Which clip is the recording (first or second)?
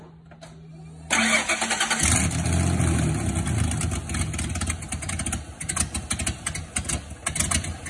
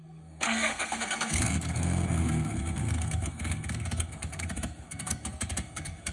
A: first